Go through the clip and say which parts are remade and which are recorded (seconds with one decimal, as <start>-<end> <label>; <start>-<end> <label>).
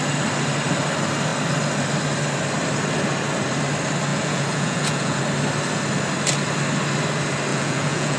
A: 0.0-4.1 recorded; 4.1-5.2 remade; 5.2-7.5 recorded; 7.5-8.2 remade